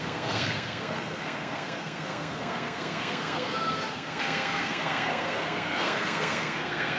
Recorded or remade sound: remade